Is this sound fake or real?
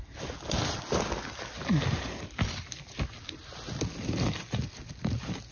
real